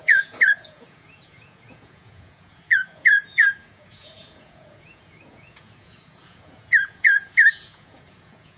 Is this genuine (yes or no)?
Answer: no